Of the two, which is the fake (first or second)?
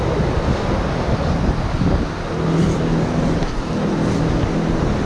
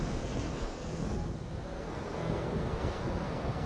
second